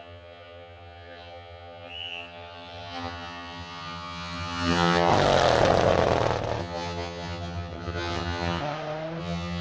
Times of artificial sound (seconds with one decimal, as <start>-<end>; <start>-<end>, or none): 0.0-5.1; 6.6-8.6; 9.2-9.6